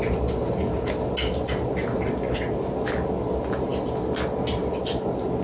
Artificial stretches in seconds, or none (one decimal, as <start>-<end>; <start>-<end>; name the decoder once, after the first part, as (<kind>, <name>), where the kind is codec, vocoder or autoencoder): none